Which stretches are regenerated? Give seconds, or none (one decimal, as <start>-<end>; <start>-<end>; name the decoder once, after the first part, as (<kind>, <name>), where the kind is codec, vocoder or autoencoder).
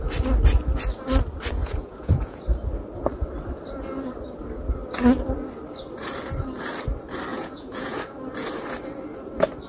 1.6-2.4 (vocoder, Vocos); 7.3-8.0